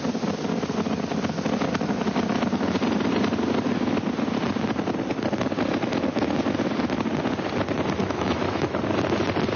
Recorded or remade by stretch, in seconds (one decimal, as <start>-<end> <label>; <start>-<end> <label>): 0.0-8.0 recorded; 8.0-8.8 remade; 8.8-9.6 recorded